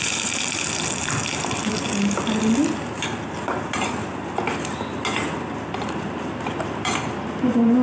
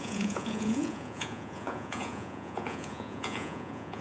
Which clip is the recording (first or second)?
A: first